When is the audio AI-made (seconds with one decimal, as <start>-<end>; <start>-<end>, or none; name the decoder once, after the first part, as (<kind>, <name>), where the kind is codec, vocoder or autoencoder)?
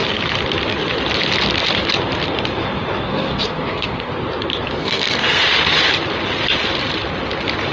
3.1-4.1 (codec, SNAC); 4.8-5.4